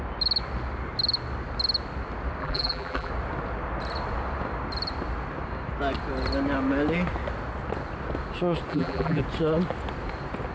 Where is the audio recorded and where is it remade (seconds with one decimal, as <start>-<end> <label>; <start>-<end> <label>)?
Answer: 0.0-2.4 recorded; 2.4-3.1 remade; 3.1-8.7 recorded; 8.7-9.2 remade; 9.2-10.5 recorded